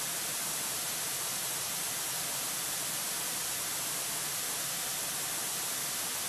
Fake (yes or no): no